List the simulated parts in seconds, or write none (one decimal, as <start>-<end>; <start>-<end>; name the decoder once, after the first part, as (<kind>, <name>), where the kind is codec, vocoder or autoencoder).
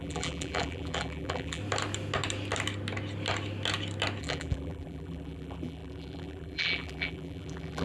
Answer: 0.0-1.6 (vocoder, BigVGAN v2); 4.2-7.8